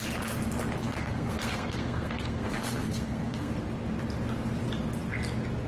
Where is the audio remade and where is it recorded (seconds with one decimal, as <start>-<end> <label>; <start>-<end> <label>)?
0.0-0.8 recorded; 0.8-3.5 remade; 3.5-5.7 recorded